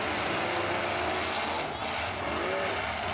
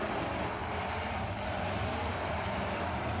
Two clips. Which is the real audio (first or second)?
first